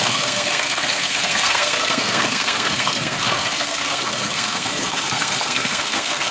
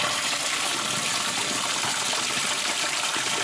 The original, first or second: second